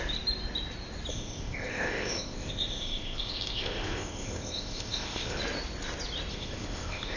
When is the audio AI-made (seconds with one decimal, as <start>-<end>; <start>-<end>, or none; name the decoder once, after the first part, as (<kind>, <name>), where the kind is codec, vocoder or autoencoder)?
1.1-5.4 (codec, ZipCodec); 6.3-7.2